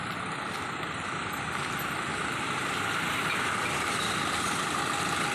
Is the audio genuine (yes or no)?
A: no